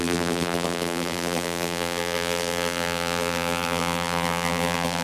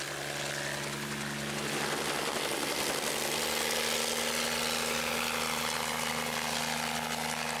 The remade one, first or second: first